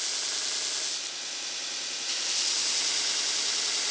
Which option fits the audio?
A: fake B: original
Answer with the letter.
B